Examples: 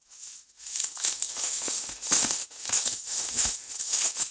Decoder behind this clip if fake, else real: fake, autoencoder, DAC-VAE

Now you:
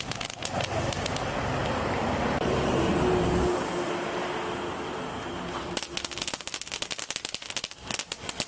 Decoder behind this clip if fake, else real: real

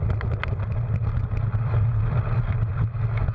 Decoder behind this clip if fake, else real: real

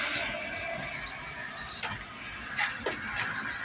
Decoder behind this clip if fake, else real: real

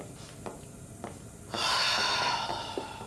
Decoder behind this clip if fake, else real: real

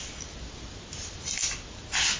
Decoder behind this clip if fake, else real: real